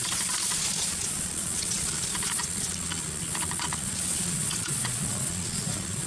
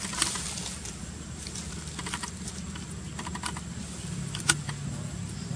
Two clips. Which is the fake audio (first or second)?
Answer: first